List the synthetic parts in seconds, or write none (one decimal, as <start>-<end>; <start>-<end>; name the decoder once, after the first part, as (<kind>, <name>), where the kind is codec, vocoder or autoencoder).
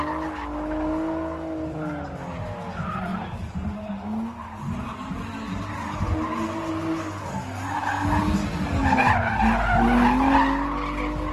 3.1-3.9 (vocoder, BigVGAN v2); 4.4-6.7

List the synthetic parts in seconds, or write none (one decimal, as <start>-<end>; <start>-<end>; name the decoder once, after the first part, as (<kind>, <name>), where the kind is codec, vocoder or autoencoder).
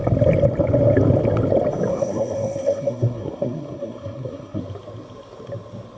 1.9-4.6 (codec, SNAC)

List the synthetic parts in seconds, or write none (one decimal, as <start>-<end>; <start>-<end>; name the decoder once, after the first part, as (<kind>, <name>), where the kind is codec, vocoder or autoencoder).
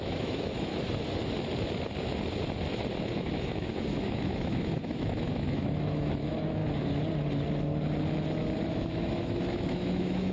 0.0-0.7 (autoencoder, DAC-VAE); 3.0-6.6; 8.7-10.3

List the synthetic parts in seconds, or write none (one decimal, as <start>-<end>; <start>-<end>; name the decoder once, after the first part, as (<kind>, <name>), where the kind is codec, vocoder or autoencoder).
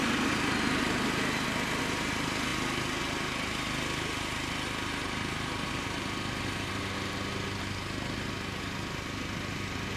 none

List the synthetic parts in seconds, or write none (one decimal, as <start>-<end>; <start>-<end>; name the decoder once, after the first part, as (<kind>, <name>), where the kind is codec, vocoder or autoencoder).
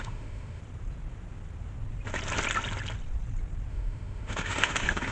0.0-0.6 (autoencoder, DAC-VAE); 3.7-5.1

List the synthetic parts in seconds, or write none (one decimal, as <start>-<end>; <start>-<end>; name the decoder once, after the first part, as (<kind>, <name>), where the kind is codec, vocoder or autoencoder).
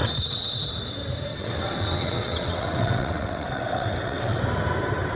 0.0-0.7 (vocoder, WaveNeXt); 1.3-4.4